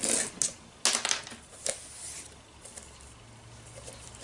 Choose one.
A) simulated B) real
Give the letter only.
B